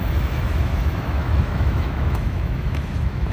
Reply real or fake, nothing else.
fake